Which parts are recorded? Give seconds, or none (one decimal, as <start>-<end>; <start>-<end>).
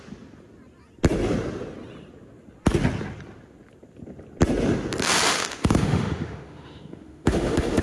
0.0-5.3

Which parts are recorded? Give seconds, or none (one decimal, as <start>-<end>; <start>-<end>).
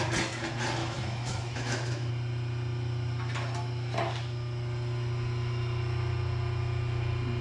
0.0-0.8; 2.1-7.4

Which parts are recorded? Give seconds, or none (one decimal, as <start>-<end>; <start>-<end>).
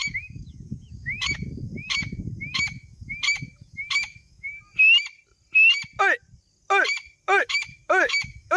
4.5-7.4